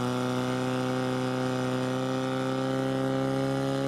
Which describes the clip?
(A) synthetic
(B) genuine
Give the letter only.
B